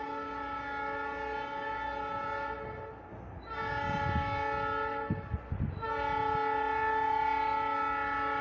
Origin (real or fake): real